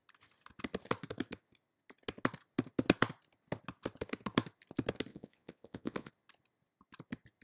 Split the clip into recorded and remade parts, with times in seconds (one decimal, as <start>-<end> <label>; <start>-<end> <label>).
0.0-5.1 recorded; 5.1-6.1 remade; 6.1-7.4 recorded